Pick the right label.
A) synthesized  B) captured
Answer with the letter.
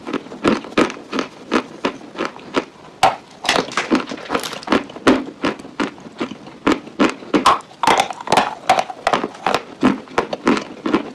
B